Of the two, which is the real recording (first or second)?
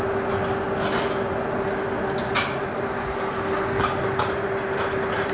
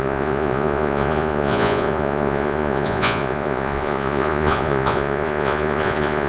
first